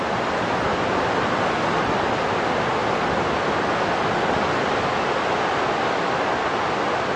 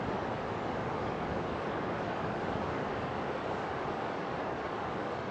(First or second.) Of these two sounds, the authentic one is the first